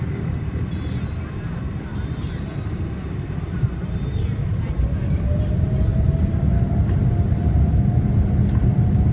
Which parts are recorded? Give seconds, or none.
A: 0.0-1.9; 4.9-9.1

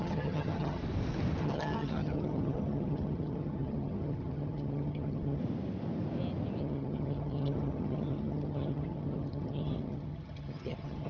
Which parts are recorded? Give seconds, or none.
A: 0.8-1.4; 5.4-6.6

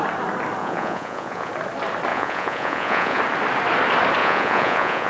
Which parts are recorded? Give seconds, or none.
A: 0.0-0.6; 1.5-2.1; 3.2-4.2

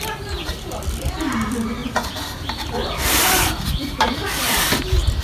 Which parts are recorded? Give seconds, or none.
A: 0.0-0.4; 1.2-1.8; 4.6-5.2

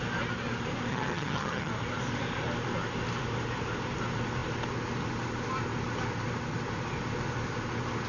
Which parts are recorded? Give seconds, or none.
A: 0.0-0.9; 1.7-8.1